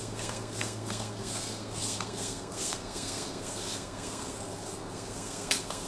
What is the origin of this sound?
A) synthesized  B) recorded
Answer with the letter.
A